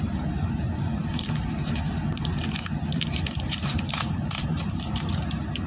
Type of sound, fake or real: fake